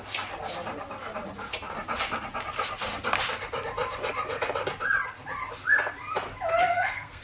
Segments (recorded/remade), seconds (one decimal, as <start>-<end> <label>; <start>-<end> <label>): 0.0-6.7 recorded; 6.7-7.2 remade